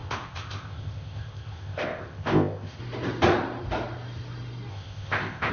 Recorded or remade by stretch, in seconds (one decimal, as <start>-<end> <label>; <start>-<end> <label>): 0.0-2.8 remade; 2.8-4.7 recorded; 4.7-5.5 remade